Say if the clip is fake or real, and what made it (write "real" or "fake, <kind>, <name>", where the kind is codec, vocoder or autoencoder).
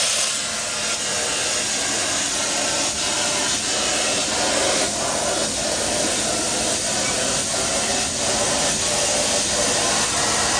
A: real